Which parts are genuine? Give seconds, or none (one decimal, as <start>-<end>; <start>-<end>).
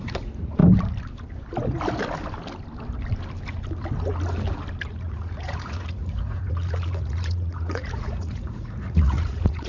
0.6-4.8